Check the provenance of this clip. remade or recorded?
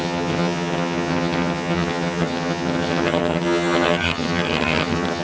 remade